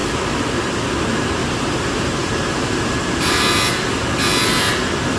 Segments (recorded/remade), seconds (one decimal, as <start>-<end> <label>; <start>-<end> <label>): 0.0-1.4 recorded; 1.4-3.3 remade; 3.3-5.2 recorded